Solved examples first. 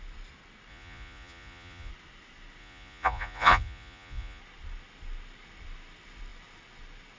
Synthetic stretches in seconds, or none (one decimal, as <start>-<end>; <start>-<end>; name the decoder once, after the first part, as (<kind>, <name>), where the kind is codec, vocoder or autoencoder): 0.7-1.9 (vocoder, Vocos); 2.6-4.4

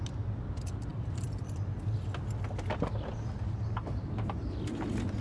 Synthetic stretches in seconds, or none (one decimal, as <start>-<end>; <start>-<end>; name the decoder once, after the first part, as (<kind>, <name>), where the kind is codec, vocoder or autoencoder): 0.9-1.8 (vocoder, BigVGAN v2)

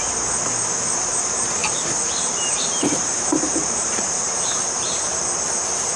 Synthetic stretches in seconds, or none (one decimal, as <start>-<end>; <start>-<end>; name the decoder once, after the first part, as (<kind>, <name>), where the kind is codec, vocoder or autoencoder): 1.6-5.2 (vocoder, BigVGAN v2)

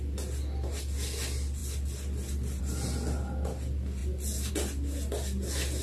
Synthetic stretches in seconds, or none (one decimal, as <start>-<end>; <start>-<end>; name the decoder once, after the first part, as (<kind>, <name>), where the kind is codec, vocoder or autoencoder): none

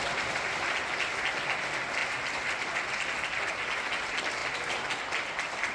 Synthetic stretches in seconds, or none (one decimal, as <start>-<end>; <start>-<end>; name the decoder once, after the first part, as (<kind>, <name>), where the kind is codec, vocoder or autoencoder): none

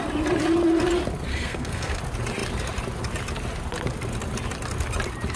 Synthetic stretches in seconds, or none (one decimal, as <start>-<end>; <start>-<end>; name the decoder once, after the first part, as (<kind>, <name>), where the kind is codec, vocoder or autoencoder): 1.3-2.0 (codec, SNAC)

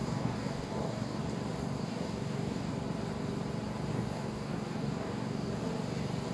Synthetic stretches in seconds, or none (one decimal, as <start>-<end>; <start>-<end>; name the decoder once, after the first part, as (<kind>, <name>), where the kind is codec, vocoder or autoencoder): 0.0-1.2 (codec, DAC); 1.8-2.7; 3.9-5.5

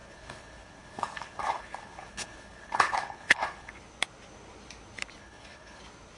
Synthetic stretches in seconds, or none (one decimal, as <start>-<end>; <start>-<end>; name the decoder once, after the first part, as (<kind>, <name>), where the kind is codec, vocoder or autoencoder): 0.0-3.7 (codec, HILCodec); 5.2-5.8